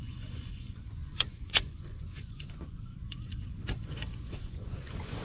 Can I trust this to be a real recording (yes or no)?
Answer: no